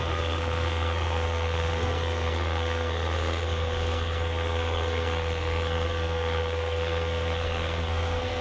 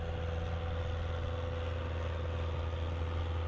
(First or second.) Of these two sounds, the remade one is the first